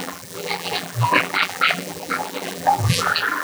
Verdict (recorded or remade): remade